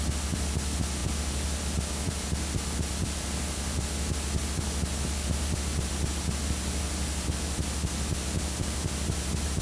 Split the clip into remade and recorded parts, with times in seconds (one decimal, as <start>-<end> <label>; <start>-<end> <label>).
0.0-9.6 recorded